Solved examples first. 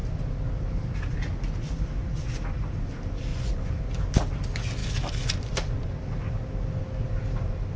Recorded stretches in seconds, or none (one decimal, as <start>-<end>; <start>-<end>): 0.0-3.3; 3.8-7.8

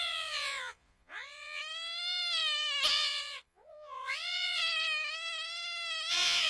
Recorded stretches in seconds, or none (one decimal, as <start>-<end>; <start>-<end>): 1.6-2.9; 4.6-6.1

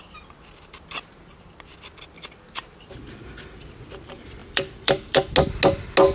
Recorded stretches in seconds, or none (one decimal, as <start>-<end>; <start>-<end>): 0.0-4.4; 5.3-6.1